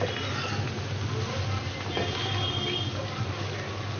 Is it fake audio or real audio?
real